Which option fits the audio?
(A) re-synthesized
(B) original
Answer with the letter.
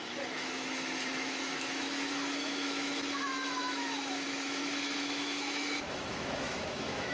A